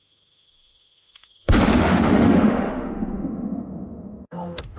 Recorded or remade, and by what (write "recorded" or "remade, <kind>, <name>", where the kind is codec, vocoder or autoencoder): remade, autoencoder, DAC-VAE